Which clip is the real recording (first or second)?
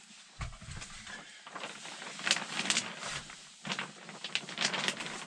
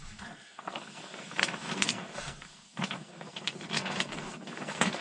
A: first